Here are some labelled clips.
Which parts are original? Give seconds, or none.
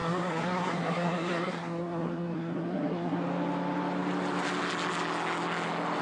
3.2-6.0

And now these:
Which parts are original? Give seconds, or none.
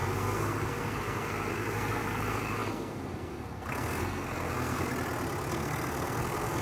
4.9-5.5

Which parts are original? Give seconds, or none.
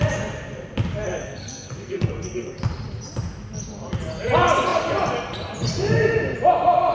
0.0-1.2; 2.6-6.9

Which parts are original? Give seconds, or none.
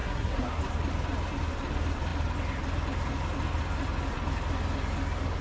0.6-5.4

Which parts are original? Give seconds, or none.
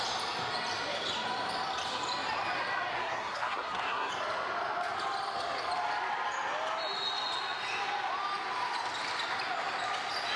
0.0-2.9; 4.1-10.4